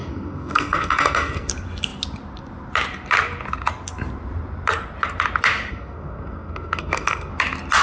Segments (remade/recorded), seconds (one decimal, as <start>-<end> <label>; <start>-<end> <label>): 0.0-1.5 remade; 1.5-5.7 recorded; 5.7-7.3 remade; 7.3-7.8 recorded